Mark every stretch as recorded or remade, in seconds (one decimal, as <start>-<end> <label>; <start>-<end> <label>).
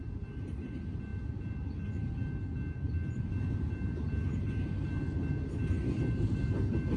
0.0-7.0 recorded